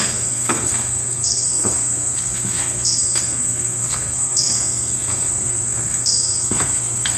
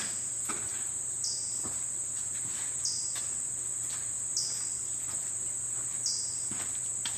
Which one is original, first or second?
second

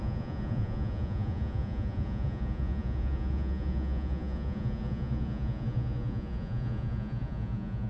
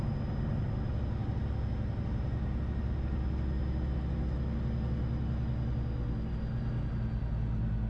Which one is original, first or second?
second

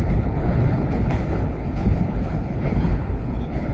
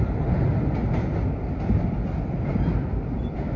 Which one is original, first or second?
second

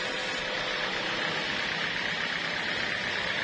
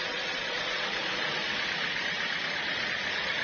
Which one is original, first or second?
first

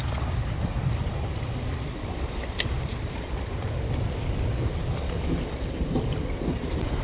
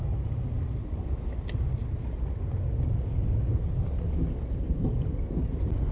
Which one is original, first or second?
second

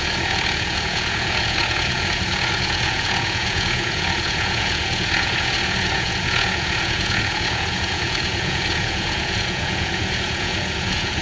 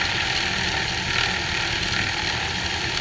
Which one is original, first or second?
second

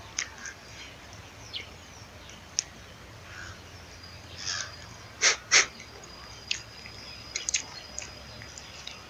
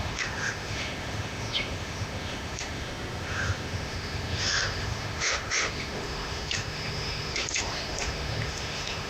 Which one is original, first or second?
first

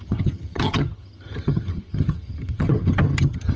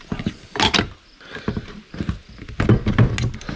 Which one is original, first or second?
second